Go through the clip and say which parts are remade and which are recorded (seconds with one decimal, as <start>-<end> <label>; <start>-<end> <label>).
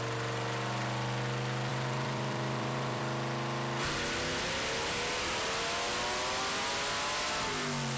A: 0.0-1.7 recorded; 1.7-3.0 remade; 3.0-8.0 recorded